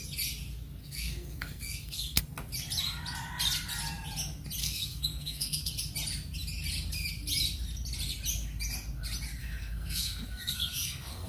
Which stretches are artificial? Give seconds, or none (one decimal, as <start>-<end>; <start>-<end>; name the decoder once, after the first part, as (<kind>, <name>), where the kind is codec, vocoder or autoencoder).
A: 0.8-2.2 (codec, SNAC); 4.6-5.7; 9.4-11.3